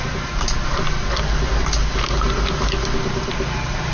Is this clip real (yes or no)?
yes